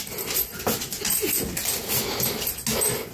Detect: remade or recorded recorded